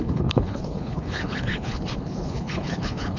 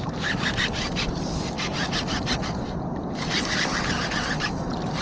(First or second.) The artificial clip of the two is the first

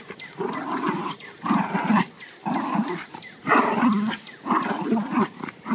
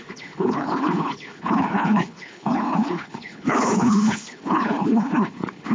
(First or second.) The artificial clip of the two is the second